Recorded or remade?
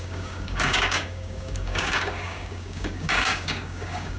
remade